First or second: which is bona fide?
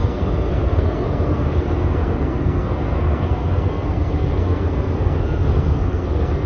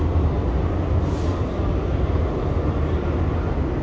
second